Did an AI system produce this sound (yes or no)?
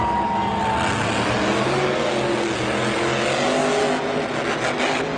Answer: no